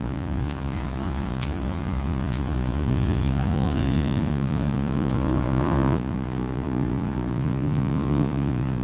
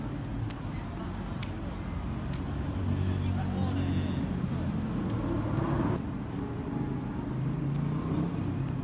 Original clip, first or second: second